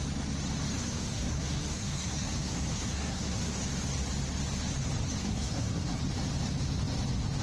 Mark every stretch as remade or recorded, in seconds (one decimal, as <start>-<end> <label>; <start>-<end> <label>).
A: 0.0-0.8 recorded; 0.8-3.6 remade; 3.6-5.2 recorded; 5.2-6.0 remade; 6.0-7.4 recorded